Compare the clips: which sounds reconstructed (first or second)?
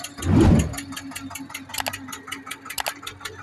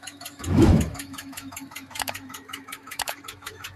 second